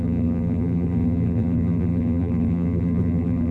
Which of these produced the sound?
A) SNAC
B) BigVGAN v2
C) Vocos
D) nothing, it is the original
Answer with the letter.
B